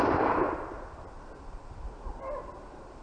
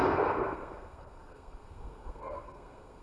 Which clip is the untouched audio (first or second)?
first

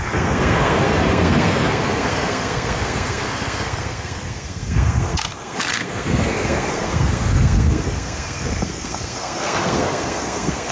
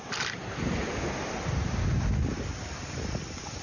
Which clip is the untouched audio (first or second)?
second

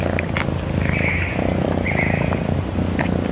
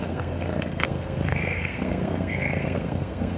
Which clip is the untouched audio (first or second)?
first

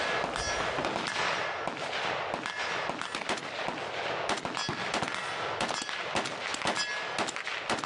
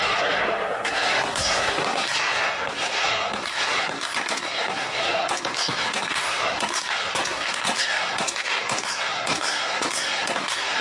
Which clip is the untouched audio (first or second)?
first